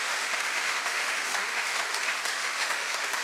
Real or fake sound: fake